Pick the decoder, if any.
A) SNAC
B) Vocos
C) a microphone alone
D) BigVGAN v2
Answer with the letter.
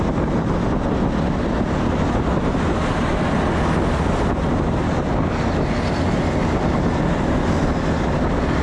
C